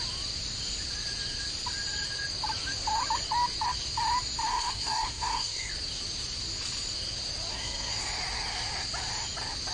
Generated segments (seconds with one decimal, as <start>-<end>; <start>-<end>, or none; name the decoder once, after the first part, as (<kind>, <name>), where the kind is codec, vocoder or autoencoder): 4.5-5.7 (codec, SNAC); 7.5-8.0